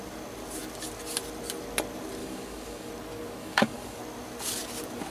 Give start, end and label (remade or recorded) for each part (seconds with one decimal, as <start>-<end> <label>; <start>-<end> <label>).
0.0-2.2 recorded; 2.2-2.9 remade; 2.9-3.4 recorded; 3.4-4.0 remade; 4.0-5.1 recorded